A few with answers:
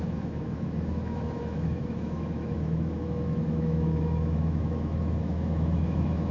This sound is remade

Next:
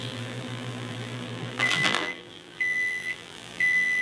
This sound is remade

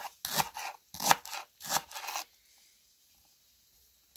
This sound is recorded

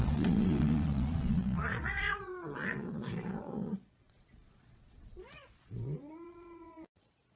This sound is remade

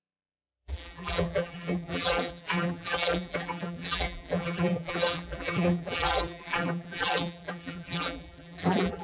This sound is remade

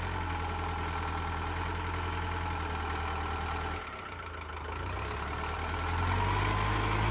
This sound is recorded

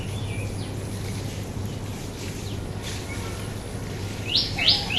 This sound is recorded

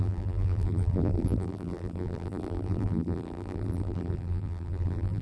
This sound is remade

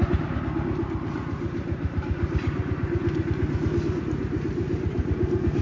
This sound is recorded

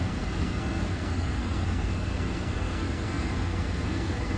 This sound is remade